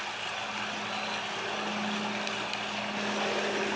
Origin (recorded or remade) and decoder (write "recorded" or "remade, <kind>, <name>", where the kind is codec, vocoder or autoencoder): recorded